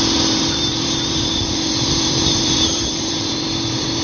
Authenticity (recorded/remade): remade